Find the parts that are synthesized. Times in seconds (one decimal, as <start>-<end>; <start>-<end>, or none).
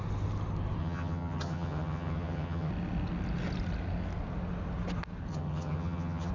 0.8-2.7; 5.3-6.3